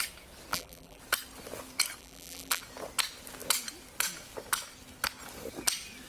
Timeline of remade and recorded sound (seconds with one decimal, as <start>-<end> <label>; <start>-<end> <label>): 0.0-0.5 recorded; 0.5-1.0 remade; 1.0-2.0 recorded; 2.0-2.6 remade; 2.6-6.1 recorded